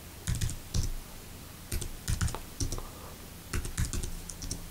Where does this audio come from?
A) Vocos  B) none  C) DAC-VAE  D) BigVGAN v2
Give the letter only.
B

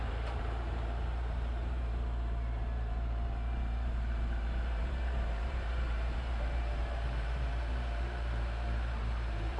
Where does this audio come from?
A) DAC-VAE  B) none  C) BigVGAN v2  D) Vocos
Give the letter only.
C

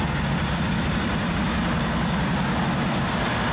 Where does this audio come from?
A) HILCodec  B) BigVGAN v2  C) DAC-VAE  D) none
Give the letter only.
D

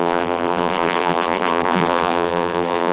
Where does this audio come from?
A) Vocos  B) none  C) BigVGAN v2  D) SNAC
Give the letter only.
C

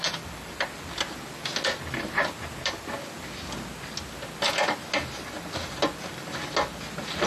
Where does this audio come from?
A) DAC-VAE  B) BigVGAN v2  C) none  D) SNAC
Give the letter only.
C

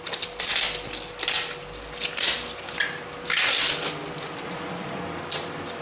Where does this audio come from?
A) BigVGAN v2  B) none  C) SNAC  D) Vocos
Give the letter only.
B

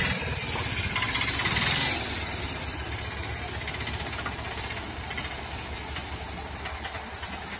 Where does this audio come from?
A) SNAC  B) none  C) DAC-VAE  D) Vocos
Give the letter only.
B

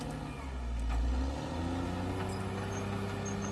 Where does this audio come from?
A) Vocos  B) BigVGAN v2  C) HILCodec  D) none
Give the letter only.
D